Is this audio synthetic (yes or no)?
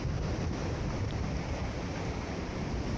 no